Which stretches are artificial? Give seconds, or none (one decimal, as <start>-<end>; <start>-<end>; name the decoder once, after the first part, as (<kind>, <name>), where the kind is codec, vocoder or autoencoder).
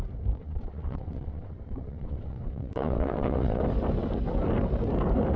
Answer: 0.4-3.6 (vocoder, WaveNeXt)